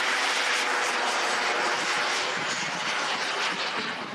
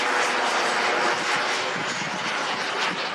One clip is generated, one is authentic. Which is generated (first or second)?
first